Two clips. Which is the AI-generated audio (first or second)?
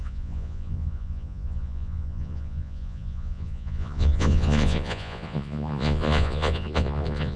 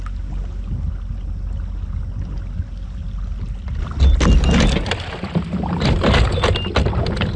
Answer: first